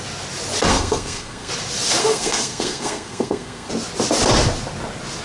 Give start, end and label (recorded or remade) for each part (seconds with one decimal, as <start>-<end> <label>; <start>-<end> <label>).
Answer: 0.0-0.7 recorded; 0.7-1.5 remade; 1.5-2.0 recorded; 2.0-3.7 remade; 3.7-5.2 recorded